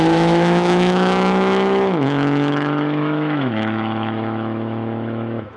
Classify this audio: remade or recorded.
remade